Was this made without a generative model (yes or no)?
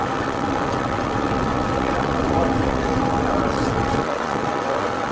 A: no